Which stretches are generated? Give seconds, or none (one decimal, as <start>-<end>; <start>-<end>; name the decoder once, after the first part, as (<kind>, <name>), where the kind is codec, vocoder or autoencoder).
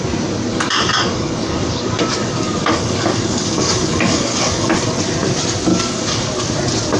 0.5-4.7 (codec, DAC); 5.7-6.3